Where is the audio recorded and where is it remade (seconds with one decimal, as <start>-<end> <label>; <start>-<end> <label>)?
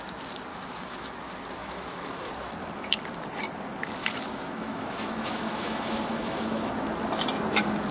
0.0-0.5 recorded; 0.5-1.1 remade; 1.1-1.6 recorded; 1.6-2.3 remade; 2.3-4.0 recorded; 4.0-6.7 remade; 6.7-7.9 recorded